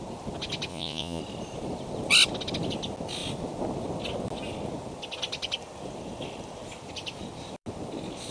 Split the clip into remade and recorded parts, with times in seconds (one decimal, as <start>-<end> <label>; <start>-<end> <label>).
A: 0.0-0.7 recorded; 0.7-1.2 remade; 1.2-8.3 recorded